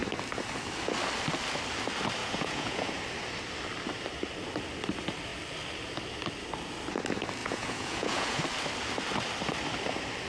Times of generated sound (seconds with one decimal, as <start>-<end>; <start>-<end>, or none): 2.2-3.0; 7.4-8.4